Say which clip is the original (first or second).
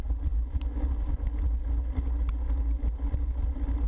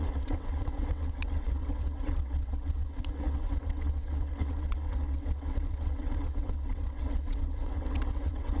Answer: first